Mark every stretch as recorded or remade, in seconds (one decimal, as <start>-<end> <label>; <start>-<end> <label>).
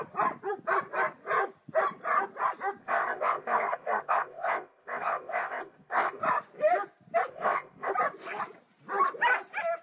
0.0-2.8 recorded; 2.8-6.2 remade; 6.2-7.3 recorded; 7.3-7.9 remade; 7.9-9.8 recorded